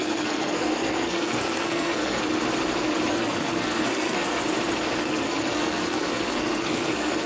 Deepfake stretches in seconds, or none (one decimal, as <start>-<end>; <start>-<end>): 0.0-2.2; 3.1-4.4; 5.0-7.3